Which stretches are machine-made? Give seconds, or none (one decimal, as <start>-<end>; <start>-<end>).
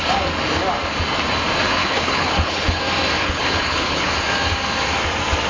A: 1.8-2.8; 3.2-4.1